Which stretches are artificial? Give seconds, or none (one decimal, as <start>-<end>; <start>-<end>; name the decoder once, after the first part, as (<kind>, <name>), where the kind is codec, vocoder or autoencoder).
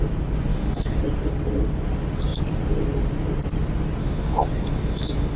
0.5-1.0 (autoencoder, DAC-VAE); 4.0-5.4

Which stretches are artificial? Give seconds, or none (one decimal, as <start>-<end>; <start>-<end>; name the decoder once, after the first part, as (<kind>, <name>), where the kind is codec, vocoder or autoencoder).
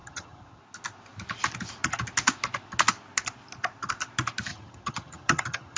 0.0-0.6 (vocoder, HiFi-GAN); 4.5-5.8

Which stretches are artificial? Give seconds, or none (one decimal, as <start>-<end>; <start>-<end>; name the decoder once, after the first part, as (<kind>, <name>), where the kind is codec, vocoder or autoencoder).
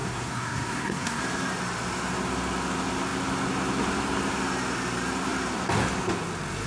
0.0-1.2 (codec, SNAC)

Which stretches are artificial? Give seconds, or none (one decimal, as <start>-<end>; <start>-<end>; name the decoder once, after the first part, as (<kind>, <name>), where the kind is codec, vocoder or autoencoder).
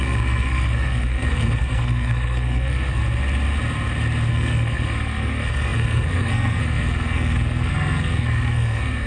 0.0-3.0 (codec, SNAC); 4.3-9.1